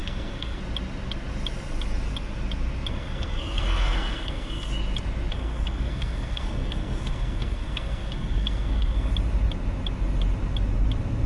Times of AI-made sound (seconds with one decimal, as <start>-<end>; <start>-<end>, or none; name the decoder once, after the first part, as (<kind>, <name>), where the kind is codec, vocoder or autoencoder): 0.0-0.6 (codec, SNAC); 2.9-4.7; 5.3-9.1